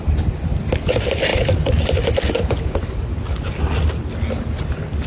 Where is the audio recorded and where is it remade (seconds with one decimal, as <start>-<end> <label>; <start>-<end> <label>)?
0.0-5.1 recorded